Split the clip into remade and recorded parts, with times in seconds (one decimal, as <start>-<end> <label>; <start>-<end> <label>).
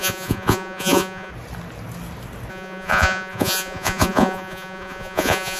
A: 0.0-1.3 remade; 1.3-2.5 recorded; 2.5-5.6 remade